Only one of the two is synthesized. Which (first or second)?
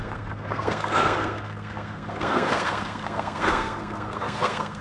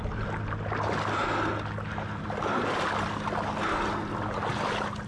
first